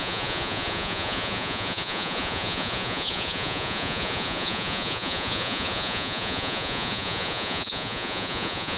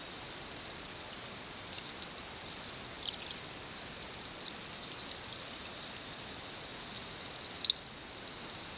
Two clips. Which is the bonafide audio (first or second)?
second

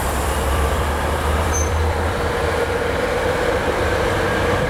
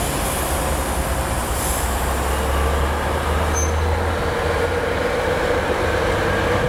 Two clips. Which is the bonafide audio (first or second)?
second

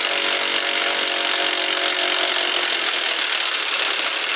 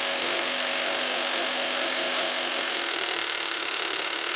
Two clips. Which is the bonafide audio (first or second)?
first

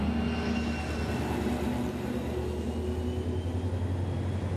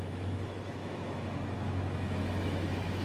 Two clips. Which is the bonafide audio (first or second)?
first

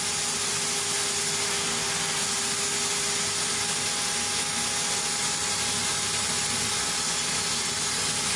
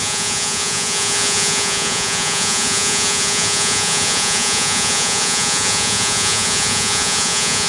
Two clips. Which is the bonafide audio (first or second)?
first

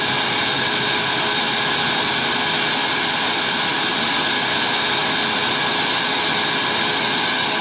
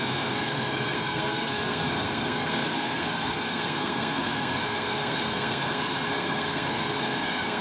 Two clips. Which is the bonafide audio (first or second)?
first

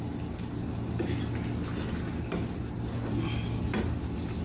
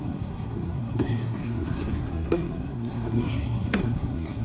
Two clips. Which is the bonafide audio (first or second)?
first